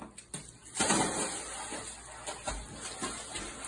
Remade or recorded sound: recorded